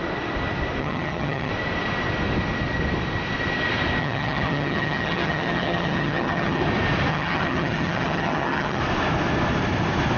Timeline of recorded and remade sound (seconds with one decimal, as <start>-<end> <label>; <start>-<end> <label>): 0.0-0.8 recorded; 0.8-1.5 remade; 1.5-4.0 recorded; 4.0-6.6 remade; 6.6-7.1 recorded; 7.1-8.8 remade; 8.8-10.2 recorded